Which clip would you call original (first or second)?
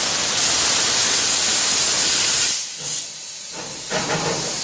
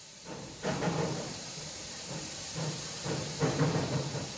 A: first